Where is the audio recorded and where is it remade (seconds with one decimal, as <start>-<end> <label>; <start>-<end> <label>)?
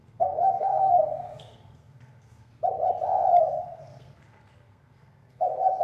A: 0.0-2.5 remade; 2.5-3.6 recorded; 3.6-5.8 remade